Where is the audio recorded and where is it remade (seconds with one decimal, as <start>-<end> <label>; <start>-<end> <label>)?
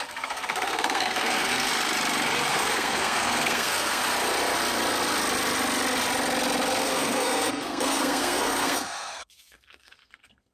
0.0-1.7 remade; 1.7-2.5 recorded; 2.5-4.0 remade; 4.0-6.8 recorded; 6.8-10.5 remade